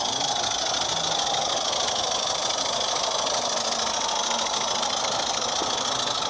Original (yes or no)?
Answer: yes